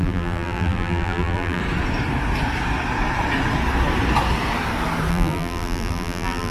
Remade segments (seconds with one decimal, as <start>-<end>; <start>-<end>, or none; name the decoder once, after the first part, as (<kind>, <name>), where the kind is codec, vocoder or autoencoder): 0.0-1.6 (vocoder, BigVGAN v2); 5.1-6.5